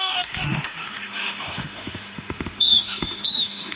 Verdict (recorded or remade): remade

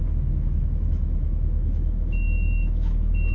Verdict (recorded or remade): remade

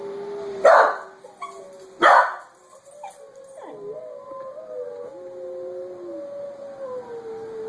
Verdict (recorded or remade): recorded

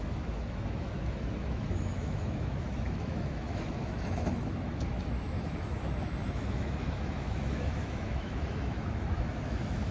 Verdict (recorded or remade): remade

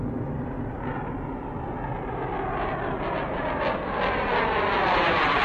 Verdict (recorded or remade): recorded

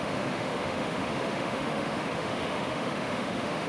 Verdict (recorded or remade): remade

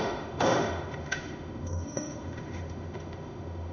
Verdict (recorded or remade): remade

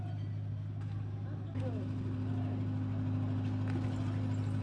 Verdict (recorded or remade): recorded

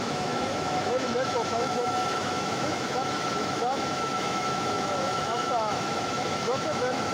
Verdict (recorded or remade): remade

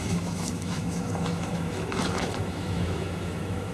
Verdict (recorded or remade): remade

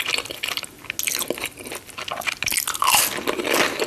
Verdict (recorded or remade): recorded